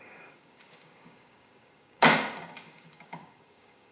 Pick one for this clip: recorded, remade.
remade